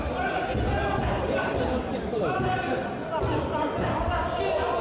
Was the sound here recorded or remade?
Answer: recorded